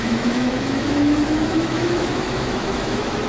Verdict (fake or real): fake